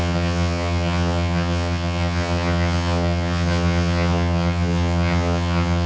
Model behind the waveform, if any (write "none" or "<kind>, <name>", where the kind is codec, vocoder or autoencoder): vocoder, HiFi-GAN